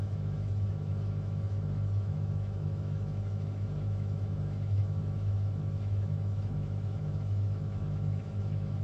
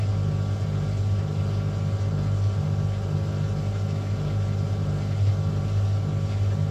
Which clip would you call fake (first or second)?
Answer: first